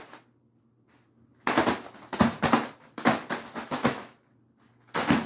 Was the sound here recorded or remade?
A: recorded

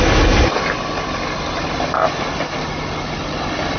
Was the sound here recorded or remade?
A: recorded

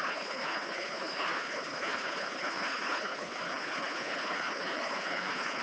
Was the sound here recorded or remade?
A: remade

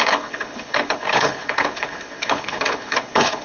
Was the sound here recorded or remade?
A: remade